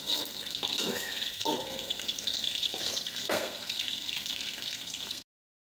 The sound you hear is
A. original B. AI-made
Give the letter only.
B